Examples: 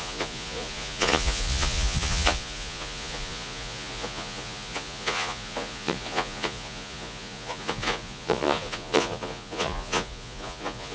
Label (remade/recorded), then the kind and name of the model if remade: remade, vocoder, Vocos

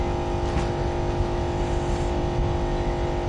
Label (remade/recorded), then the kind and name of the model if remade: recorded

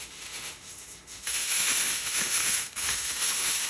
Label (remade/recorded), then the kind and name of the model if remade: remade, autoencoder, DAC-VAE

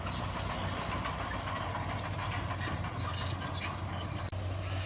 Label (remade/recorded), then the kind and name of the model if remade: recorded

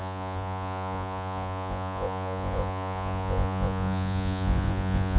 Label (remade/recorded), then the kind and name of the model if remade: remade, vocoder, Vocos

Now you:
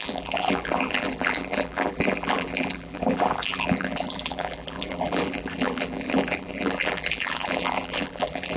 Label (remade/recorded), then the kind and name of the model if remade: remade, vocoder, BigVGAN v2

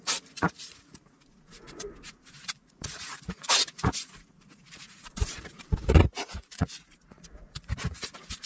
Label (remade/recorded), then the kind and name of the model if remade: remade, vocoder, Vocos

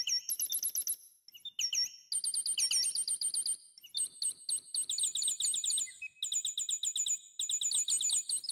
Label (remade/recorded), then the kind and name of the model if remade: recorded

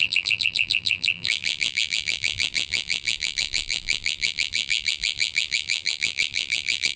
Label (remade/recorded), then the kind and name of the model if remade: remade, vocoder, BigVGAN v2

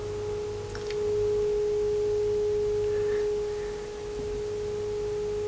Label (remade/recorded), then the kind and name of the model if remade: recorded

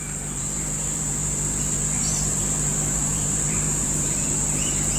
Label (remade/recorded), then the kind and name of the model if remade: remade, vocoder, BigVGAN v2